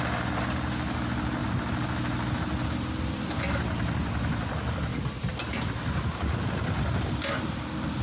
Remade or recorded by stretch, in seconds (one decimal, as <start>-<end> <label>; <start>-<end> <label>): 0.0-8.0 recorded